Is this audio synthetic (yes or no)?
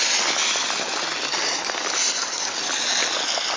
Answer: no